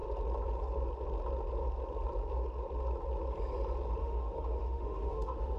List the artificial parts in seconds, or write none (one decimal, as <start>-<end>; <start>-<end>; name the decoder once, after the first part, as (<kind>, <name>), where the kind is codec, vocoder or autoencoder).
4.0-5.6 (autoencoder, DAC-VAE)